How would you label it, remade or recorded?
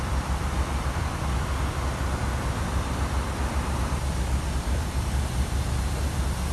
remade